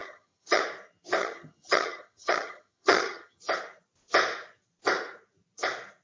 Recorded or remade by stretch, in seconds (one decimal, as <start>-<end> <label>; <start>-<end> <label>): 0.0-0.6 remade; 0.6-1.2 recorded; 1.2-3.4 remade; 3.4-6.0 recorded